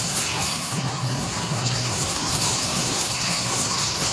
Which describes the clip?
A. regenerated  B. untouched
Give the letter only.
A